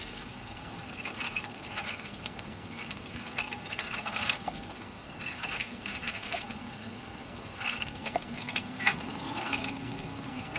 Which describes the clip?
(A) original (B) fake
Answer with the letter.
B